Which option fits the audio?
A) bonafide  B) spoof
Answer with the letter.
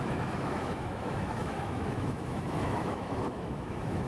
B